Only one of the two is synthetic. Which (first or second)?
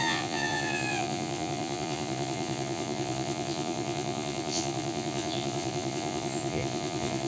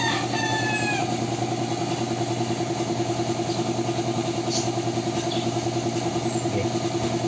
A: first